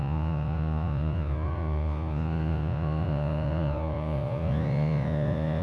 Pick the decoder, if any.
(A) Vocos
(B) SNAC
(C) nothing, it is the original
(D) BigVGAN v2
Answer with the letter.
A